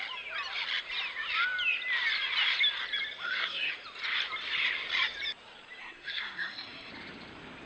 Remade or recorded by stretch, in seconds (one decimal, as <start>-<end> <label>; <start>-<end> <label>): 0.0-3.2 recorded; 3.2-3.7 remade; 3.7-5.8 recorded; 5.8-6.9 remade; 6.9-7.7 recorded